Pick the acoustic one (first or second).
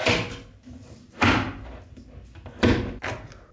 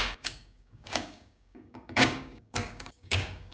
first